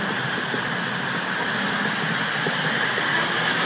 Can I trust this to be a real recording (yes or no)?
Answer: yes